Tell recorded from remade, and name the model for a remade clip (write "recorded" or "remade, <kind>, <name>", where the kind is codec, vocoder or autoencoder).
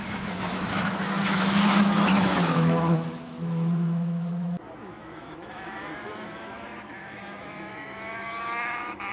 remade, autoencoder, DAC-VAE